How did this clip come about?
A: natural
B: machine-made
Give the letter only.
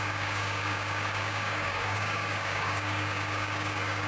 B